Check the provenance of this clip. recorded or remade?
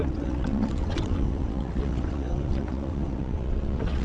remade